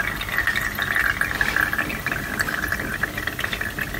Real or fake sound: real